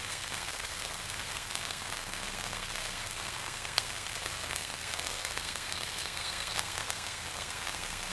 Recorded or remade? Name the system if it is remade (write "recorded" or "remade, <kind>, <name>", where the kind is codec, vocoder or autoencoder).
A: remade, codec, SNAC